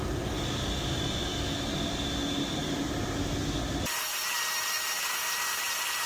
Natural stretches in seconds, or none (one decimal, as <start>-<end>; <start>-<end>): 0.0-6.1